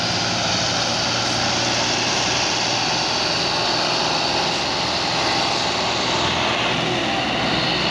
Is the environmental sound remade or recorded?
recorded